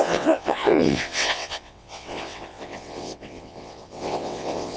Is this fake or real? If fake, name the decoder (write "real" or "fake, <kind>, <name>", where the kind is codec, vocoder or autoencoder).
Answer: fake, vocoder, WaveNeXt